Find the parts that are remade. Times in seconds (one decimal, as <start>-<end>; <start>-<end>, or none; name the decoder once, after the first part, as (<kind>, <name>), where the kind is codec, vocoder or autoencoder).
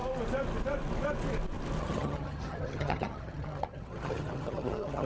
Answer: 1.8-5.1 (vocoder, HiFi-GAN)